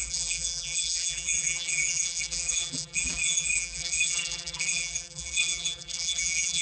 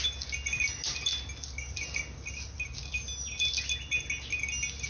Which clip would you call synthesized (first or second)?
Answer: first